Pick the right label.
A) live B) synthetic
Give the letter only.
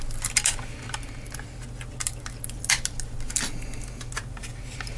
A